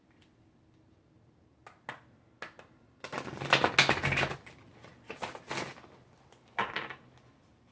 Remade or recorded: recorded